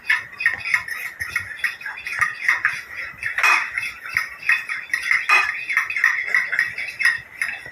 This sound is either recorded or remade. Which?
recorded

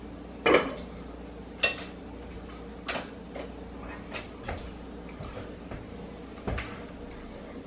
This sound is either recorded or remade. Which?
recorded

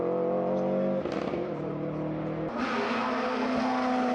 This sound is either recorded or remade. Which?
recorded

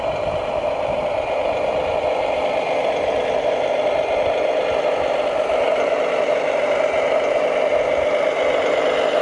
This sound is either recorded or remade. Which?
recorded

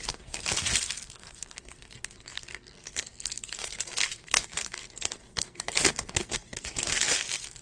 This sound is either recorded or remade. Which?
remade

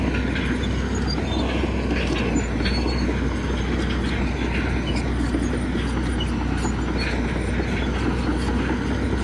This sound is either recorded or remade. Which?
recorded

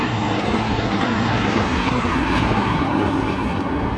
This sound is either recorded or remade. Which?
remade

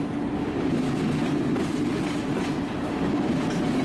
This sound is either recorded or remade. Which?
recorded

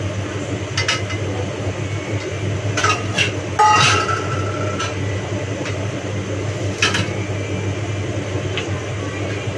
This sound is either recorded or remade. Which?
recorded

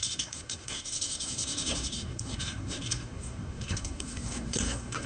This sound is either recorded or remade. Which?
remade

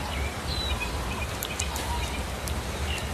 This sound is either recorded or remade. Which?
recorded